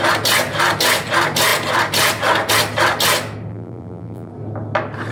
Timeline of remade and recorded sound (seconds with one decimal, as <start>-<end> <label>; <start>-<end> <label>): 0.0-3.5 recorded; 3.5-4.3 remade; 4.3-5.1 recorded